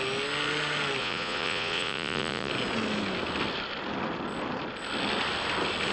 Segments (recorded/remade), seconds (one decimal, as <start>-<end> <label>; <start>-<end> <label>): 0.0-1.0 recorded; 1.0-2.5 remade; 2.5-5.9 recorded